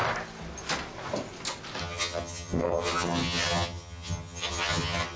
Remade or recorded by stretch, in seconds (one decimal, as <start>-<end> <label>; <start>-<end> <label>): 0.0-1.8 recorded; 1.8-5.2 remade